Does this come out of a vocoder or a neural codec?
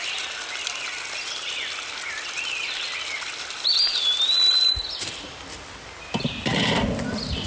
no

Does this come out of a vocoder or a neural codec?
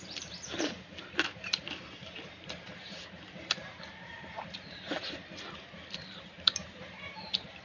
yes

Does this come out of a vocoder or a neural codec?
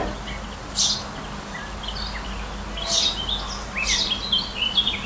no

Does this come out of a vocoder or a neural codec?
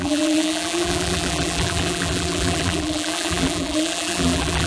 yes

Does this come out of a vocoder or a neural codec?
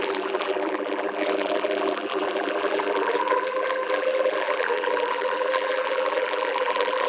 yes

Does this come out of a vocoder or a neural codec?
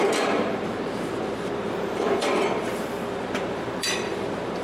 yes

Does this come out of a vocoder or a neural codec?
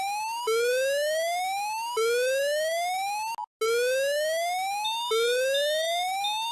no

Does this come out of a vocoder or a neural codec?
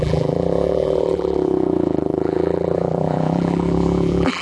yes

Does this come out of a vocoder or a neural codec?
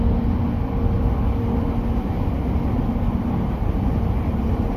no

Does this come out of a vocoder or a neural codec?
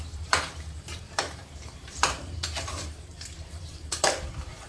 yes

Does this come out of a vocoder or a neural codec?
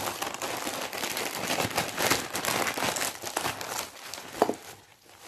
no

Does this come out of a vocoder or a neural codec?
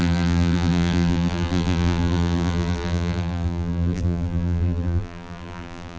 yes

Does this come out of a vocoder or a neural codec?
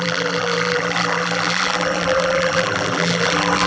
yes